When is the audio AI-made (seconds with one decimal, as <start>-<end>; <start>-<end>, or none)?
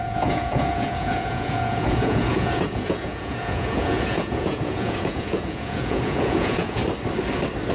0.0-6.8